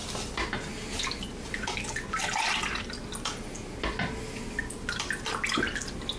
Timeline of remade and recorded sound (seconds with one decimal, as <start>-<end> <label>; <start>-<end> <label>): 0.0-6.2 recorded